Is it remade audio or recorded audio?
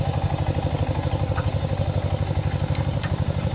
recorded